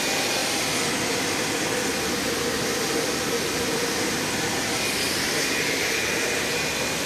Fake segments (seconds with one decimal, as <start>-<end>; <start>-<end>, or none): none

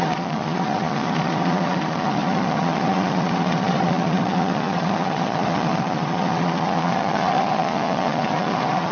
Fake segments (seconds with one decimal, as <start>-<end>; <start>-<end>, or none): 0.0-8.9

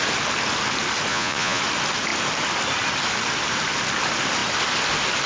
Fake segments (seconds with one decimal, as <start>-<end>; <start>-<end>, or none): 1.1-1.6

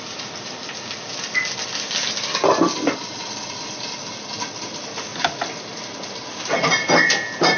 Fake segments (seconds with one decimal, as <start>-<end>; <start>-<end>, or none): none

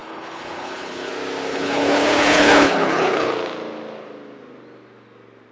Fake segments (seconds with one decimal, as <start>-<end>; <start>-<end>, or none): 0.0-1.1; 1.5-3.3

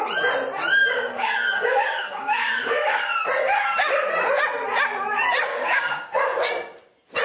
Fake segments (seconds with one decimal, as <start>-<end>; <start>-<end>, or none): 0.8-3.0; 5.5-6.5

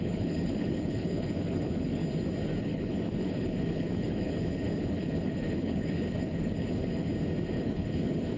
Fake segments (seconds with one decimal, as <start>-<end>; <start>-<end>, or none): 0.0-2.0; 2.6-7.1; 7.6-8.4

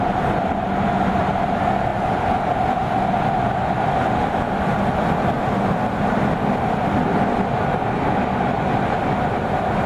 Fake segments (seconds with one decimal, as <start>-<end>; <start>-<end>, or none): none